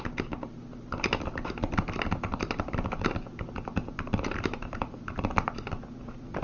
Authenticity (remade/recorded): recorded